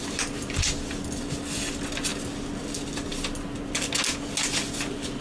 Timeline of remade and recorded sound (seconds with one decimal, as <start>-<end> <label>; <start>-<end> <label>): 0.0-5.2 recorded